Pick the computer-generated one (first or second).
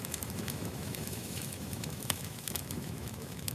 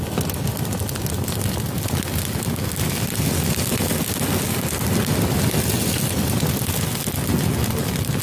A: first